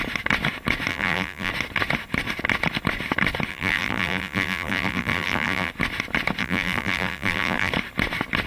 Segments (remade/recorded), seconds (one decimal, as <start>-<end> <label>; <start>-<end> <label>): 0.0-0.9 recorded; 0.9-1.5 remade; 1.5-3.5 recorded; 3.5-5.7 remade; 5.7-6.4 recorded; 6.4-7.7 remade; 7.7-8.5 recorded